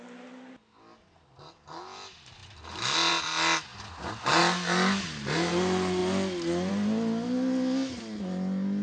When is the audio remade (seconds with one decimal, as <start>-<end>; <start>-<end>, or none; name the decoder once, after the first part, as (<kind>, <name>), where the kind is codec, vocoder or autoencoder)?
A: none